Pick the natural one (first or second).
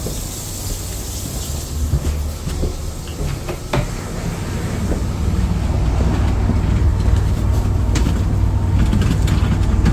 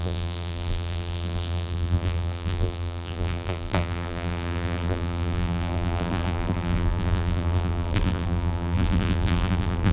first